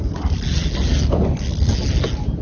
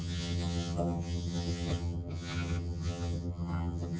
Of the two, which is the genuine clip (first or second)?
first